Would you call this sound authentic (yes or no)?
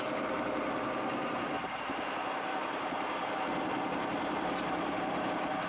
no